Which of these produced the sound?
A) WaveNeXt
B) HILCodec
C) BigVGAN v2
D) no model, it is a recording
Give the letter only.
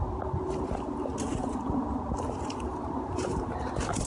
C